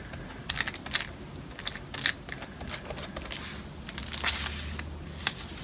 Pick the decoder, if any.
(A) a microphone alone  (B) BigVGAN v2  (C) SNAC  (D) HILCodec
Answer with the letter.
A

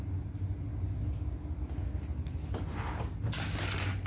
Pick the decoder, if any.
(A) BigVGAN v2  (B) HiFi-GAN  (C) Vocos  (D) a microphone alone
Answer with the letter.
D